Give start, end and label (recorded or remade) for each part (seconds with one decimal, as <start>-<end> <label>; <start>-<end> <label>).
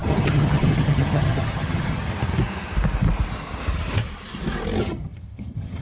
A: 0.0-2.0 remade; 2.0-4.8 recorded; 4.8-5.8 remade